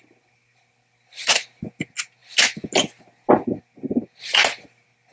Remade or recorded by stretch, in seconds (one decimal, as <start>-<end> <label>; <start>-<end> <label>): 0.0-5.1 recorded